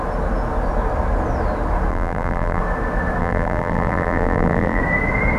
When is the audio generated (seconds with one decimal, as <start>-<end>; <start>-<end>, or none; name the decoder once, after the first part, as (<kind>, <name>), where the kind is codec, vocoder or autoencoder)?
1.9-2.6 (vocoder, BigVGAN v2); 3.2-4.8